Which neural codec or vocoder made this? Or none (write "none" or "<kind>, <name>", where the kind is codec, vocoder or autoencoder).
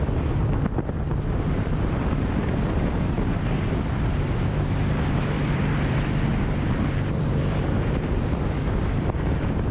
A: vocoder, BigVGAN v2